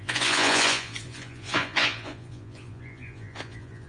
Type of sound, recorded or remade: remade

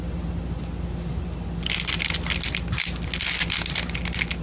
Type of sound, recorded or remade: recorded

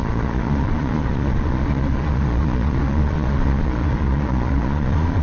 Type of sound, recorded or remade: remade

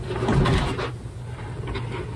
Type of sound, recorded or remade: recorded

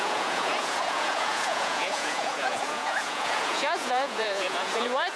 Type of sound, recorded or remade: remade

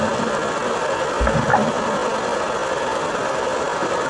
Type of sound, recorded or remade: recorded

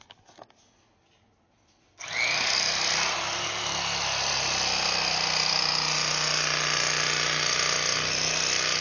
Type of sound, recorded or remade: recorded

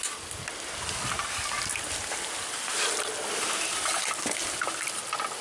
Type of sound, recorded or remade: recorded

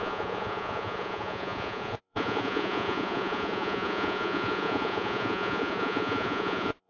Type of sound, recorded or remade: remade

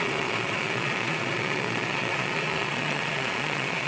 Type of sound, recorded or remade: remade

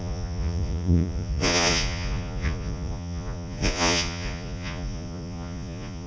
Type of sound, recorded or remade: remade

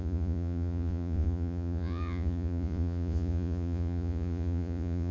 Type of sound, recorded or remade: remade